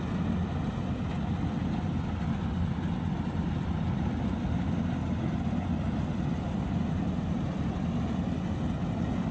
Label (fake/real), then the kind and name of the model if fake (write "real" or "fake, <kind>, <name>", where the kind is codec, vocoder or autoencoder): real